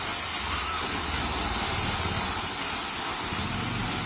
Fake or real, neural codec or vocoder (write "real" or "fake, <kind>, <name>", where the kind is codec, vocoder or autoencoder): real